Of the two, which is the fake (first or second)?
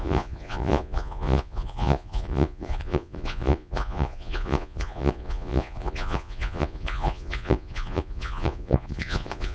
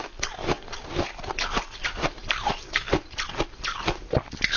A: first